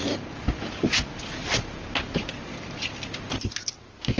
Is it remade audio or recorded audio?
recorded